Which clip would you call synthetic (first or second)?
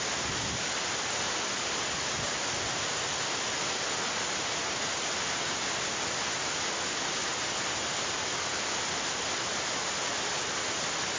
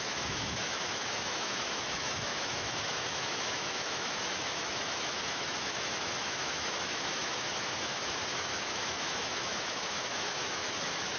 second